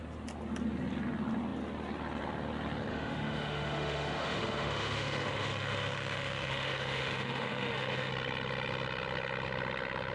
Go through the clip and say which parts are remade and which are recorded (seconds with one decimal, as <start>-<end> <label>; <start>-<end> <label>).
0.0-2.9 recorded; 2.9-8.1 remade; 8.1-10.1 recorded